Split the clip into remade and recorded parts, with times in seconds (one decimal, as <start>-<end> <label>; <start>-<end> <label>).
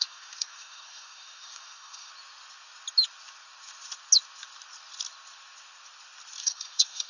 0.0-2.1 remade; 2.1-6.4 recorded; 6.4-7.1 remade